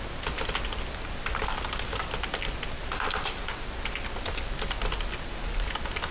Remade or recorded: recorded